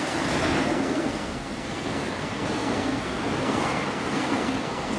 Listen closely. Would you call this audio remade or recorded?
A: remade